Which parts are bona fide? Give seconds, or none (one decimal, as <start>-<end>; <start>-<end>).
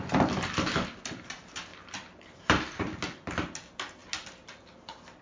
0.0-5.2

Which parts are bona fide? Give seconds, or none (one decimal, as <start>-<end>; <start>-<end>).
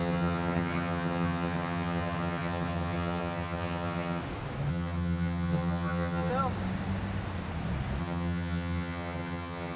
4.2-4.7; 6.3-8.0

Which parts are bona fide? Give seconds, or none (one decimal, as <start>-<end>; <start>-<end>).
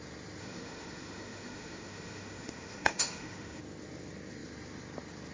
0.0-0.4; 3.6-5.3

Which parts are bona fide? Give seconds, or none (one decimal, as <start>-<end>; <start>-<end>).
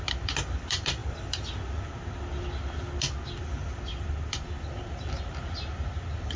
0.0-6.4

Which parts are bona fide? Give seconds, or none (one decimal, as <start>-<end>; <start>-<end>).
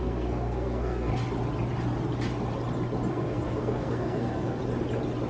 1.1-3.1; 4.6-5.3